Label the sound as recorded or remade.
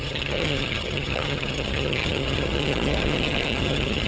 remade